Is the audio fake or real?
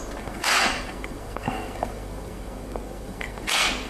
fake